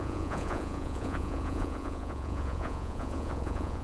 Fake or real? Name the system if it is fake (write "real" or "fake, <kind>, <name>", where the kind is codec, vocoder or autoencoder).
fake, vocoder, Vocos